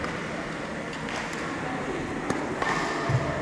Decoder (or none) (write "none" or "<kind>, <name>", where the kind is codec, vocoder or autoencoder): none